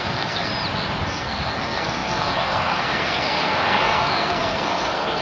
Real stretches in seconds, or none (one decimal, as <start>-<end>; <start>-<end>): 0.5-1.1